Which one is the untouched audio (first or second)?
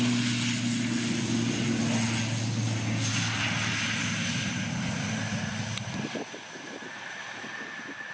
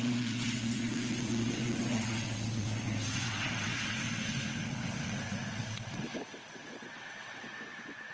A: first